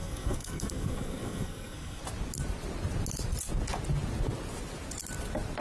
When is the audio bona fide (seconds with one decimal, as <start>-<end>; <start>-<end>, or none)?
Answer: 2.0-5.6